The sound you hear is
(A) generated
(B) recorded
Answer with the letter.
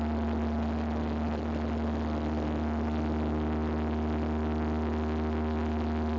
B